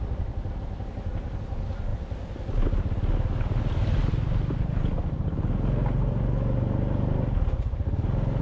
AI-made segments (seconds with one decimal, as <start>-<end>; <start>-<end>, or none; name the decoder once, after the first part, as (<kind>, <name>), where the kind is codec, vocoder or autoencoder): none